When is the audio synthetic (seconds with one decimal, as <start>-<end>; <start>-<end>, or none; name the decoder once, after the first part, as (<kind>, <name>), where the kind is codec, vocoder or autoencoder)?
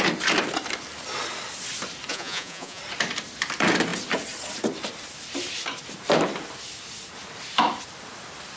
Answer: 2.1-2.8 (vocoder, Vocos)